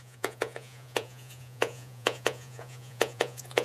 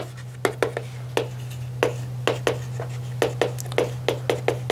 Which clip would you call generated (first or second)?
first